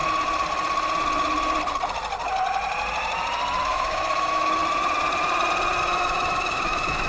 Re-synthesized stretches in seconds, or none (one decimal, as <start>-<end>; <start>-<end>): 3.6-4.6; 5.8-7.1